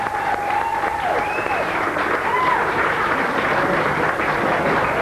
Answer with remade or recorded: recorded